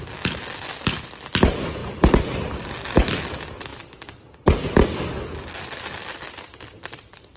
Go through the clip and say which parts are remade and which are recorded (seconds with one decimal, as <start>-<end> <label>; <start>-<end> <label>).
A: 0.0-7.4 recorded

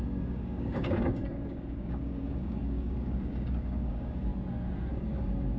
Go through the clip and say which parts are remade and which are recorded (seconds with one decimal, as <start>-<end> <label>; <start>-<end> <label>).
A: 0.0-4.3 remade; 4.3-4.9 recorded; 4.9-5.6 remade